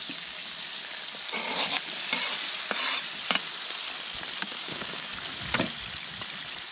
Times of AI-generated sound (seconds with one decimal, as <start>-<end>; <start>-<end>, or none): 0.0-0.4; 4.4-5.1